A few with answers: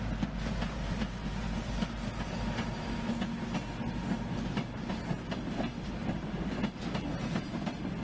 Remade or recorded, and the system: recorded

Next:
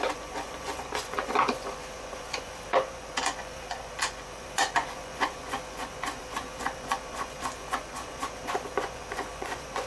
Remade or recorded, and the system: remade, vocoder, Vocos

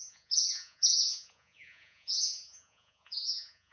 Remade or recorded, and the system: remade, vocoder, Vocos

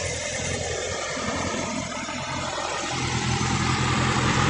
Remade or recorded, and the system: recorded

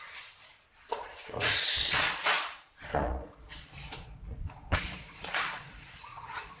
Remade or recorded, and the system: remade, vocoder, Vocos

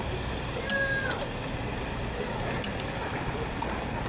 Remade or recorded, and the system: recorded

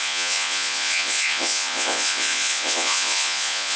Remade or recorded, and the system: remade, vocoder, Vocos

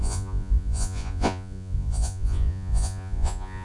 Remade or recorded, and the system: remade, vocoder, Vocos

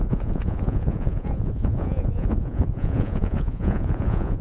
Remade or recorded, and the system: remade, vocoder, Vocos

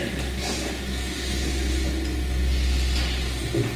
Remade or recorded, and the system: recorded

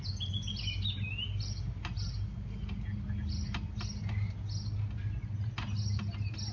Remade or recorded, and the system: recorded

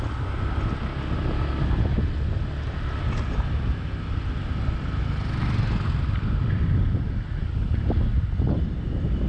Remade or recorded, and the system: recorded